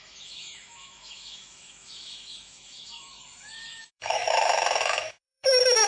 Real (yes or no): no